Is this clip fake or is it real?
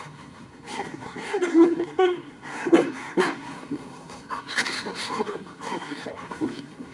fake